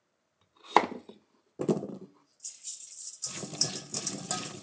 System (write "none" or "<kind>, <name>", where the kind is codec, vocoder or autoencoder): vocoder, BigVGAN v2